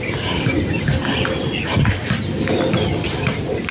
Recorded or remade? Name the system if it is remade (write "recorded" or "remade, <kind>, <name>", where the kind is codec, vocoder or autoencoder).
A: recorded